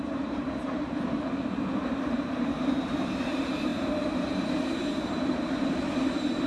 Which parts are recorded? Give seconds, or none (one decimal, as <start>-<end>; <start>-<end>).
none